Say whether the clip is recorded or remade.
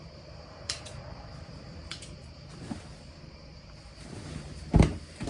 remade